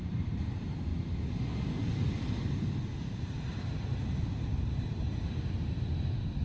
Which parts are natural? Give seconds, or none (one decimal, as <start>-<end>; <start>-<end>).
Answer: 0.9-2.9